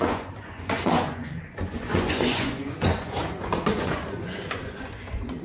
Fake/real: fake